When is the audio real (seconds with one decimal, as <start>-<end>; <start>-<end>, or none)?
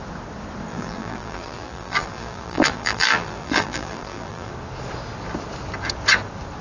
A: 0.0-0.7; 4.5-6.6